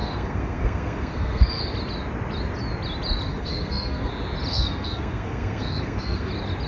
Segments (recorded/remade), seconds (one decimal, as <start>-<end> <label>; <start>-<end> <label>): 0.0-1.6 remade; 1.6-3.3 recorded; 3.3-4.1 remade; 4.1-4.5 recorded; 4.5-6.3 remade; 6.3-6.7 recorded